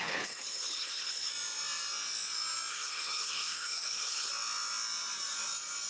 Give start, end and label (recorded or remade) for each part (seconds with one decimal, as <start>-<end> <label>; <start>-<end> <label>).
0.0-1.3 remade; 1.3-2.7 recorded; 2.7-4.3 remade; 4.3-5.9 recorded